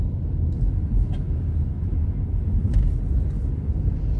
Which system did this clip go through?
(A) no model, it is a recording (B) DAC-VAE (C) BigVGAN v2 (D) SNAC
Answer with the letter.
A